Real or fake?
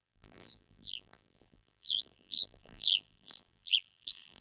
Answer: fake